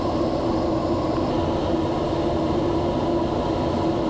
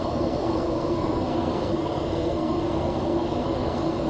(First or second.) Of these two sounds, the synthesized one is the second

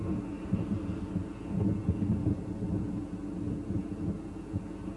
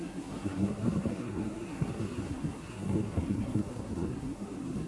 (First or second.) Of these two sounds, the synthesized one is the second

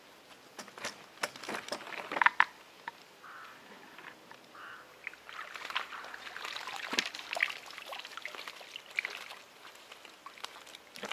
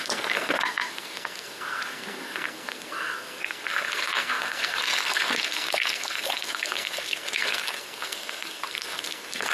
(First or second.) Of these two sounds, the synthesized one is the second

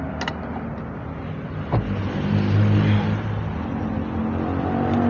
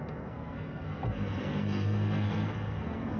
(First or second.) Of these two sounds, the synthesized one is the second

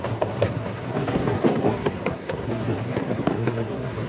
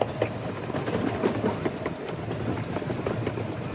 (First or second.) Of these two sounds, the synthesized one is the first